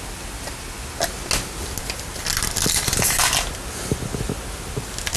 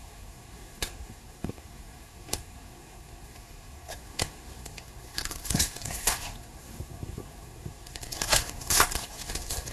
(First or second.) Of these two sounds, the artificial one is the second